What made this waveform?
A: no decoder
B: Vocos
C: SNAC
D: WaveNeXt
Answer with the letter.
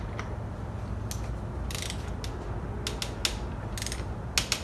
A